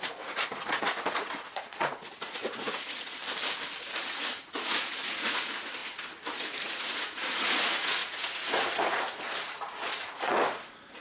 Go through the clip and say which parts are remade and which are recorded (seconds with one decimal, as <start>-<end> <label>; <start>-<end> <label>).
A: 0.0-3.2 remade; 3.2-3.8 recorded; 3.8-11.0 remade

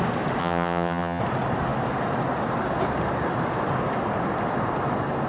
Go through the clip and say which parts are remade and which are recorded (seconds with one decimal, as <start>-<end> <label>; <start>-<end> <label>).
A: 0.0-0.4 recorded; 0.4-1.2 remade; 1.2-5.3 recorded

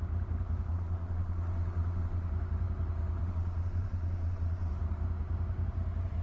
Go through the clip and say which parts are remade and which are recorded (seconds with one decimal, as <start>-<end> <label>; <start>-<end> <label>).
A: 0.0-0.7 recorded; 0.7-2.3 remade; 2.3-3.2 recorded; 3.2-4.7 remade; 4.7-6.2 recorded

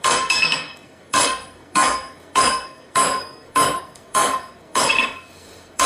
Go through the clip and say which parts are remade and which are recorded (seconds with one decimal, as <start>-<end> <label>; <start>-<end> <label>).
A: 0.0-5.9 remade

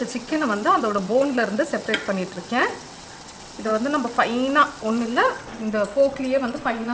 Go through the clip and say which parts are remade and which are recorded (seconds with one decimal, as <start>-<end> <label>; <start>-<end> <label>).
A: 0.0-3.7 remade; 3.7-4.8 recorded; 4.8-6.9 remade

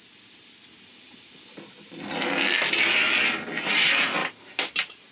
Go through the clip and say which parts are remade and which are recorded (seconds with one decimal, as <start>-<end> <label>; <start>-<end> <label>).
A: 0.0-4.2 recorded; 4.2-5.1 remade